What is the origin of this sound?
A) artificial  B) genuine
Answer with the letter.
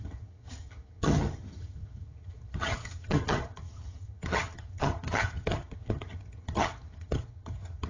A